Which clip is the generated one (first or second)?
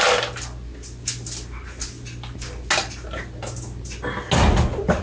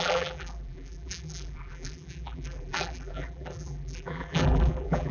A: second